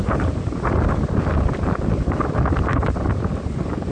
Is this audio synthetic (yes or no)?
no